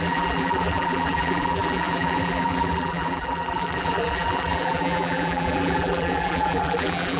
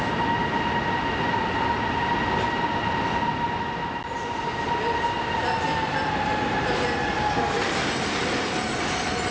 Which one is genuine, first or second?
second